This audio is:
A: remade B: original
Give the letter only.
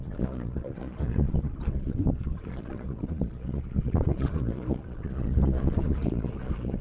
A